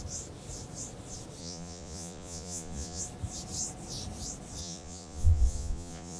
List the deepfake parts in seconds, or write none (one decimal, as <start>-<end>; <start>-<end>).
1.4-3.0; 4.6-6.2